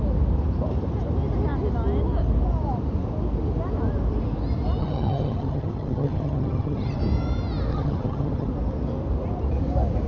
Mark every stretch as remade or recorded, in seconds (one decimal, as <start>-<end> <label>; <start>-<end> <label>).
0.0-4.8 recorded; 4.8-7.0 remade; 7.0-7.7 recorded; 7.7-8.5 remade; 8.5-10.1 recorded